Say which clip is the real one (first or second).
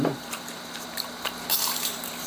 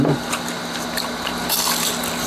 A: second